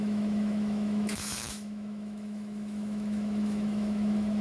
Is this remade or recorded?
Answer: remade